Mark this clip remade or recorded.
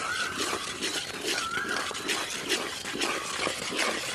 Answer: recorded